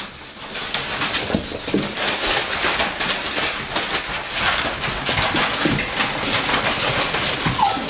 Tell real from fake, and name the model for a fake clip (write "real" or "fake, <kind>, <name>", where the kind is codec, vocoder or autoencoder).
real